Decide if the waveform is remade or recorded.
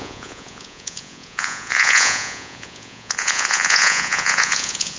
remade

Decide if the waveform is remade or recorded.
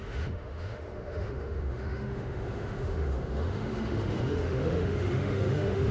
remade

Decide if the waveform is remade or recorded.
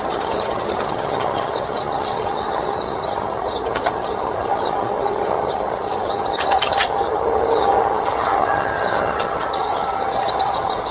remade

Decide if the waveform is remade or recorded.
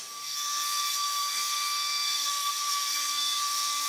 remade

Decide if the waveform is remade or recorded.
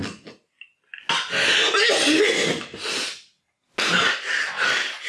recorded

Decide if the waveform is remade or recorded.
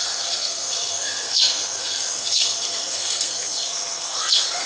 remade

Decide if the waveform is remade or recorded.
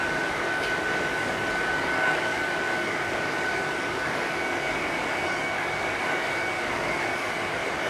remade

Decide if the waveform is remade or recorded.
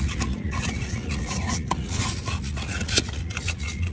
remade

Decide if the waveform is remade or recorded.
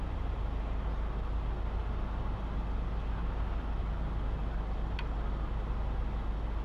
recorded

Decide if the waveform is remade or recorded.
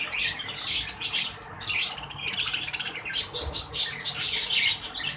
recorded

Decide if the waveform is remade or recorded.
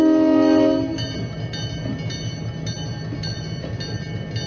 recorded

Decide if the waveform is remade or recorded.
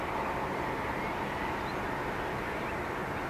recorded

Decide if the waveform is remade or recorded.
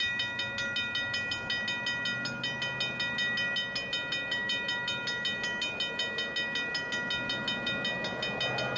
recorded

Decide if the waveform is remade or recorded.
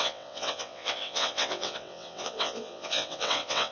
remade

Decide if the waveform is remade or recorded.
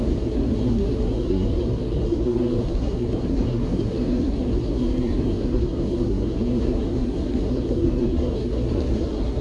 remade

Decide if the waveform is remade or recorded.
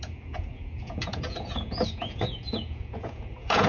remade